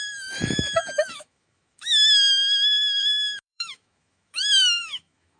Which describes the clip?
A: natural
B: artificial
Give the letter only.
B